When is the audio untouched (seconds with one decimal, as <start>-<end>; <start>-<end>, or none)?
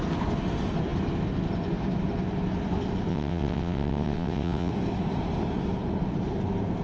0.0-3.1; 4.7-6.8